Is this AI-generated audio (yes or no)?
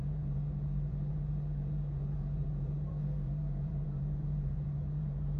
yes